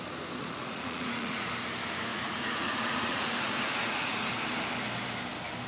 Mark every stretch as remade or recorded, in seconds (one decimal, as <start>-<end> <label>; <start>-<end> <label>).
0.0-0.4 recorded; 0.4-1.5 remade; 1.5-2.1 recorded; 2.1-4.3 remade; 4.3-5.7 recorded